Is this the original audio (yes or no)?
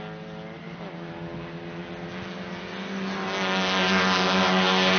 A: yes